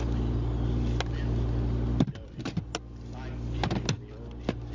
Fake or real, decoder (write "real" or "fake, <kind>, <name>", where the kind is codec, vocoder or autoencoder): real